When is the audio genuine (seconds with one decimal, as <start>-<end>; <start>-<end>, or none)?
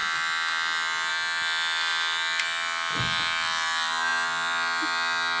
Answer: 0.0-5.4